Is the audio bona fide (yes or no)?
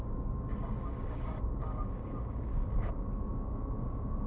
no